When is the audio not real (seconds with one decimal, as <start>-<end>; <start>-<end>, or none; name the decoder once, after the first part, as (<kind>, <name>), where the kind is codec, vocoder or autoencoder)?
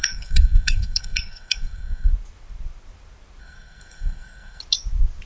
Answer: 0.0-2.1 (codec, SNAC); 3.4-4.6